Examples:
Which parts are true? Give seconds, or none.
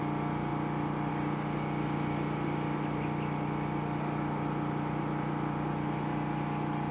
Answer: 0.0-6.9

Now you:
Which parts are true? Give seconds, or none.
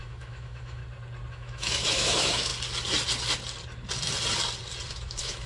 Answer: 0.8-1.3; 2.5-4.9